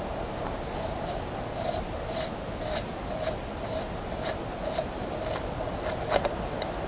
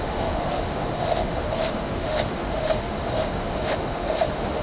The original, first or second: first